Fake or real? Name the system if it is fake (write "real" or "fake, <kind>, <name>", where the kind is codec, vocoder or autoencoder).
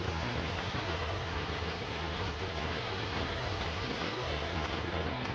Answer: fake, codec, SNAC